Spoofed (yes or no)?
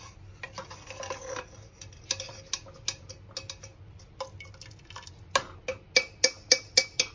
no